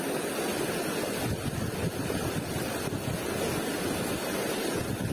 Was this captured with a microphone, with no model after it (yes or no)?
yes